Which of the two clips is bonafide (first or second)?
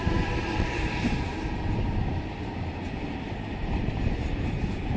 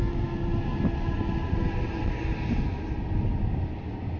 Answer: second